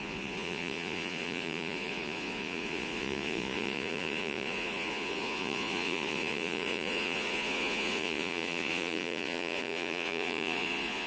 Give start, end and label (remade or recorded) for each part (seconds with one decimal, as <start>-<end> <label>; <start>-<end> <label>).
0.0-11.1 remade